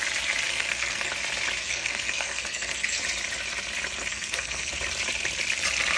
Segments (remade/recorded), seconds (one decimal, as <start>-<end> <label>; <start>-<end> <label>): 0.0-0.5 recorded; 0.5-1.1 remade; 1.1-1.6 recorded; 1.6-3.0 remade; 3.0-4.1 recorded; 4.1-4.7 remade; 4.7-6.0 recorded